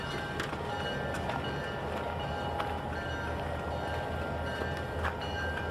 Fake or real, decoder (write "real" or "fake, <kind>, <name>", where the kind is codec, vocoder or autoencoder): real